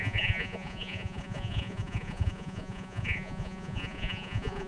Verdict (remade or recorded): remade